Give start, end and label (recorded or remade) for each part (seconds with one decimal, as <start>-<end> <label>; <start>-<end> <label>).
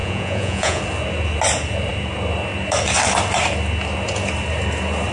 0.0-0.8 remade; 0.8-5.1 recorded